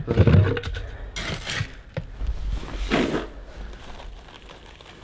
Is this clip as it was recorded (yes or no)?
yes